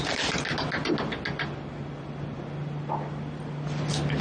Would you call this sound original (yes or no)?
yes